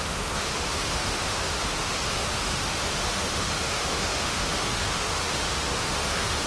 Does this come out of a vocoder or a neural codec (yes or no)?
yes